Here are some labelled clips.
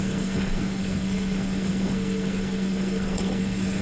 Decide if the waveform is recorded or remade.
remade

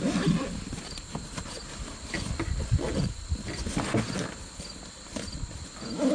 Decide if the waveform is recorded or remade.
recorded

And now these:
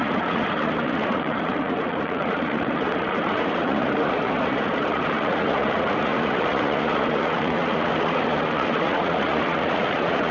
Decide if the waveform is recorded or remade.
remade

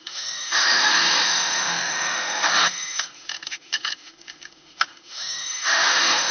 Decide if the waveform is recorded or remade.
remade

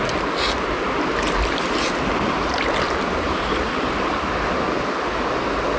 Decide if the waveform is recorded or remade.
recorded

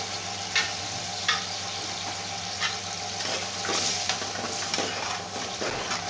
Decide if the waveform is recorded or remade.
recorded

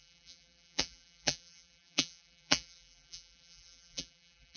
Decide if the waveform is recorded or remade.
remade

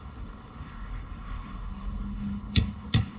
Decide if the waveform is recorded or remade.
remade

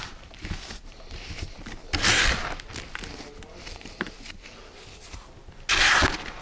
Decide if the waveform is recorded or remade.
recorded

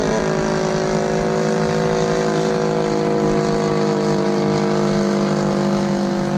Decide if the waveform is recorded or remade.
recorded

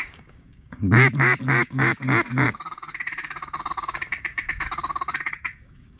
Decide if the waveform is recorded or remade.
remade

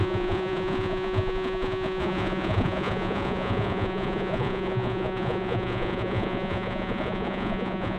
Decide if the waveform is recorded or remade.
remade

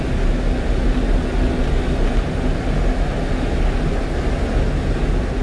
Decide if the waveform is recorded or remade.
recorded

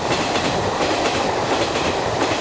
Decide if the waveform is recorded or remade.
remade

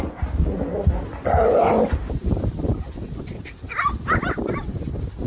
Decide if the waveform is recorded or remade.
recorded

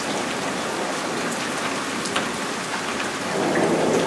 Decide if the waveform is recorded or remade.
recorded